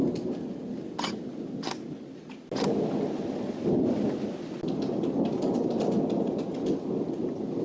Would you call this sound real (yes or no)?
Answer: yes